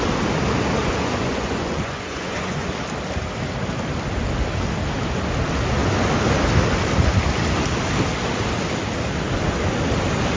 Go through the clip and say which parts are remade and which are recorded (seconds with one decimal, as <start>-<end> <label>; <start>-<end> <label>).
0.0-0.8 recorded; 0.8-2.7 remade; 2.7-10.4 recorded